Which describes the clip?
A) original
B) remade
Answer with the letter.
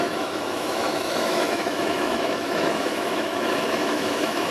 B